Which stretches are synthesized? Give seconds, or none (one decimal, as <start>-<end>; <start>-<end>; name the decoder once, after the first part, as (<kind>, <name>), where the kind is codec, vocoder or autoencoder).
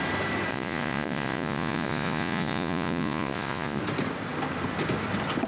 0.5-3.8 (vocoder, Vocos)